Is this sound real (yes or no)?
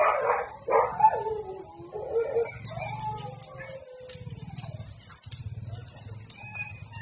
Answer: yes